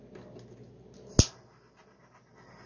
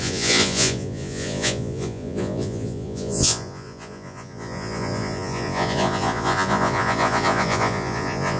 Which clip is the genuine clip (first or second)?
first